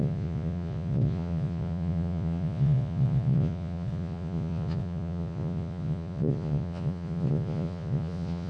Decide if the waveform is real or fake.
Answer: fake